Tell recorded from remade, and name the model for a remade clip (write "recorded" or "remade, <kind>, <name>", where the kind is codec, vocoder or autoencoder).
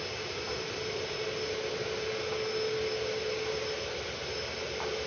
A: recorded